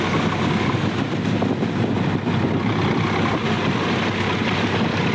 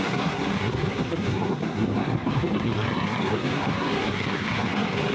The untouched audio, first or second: first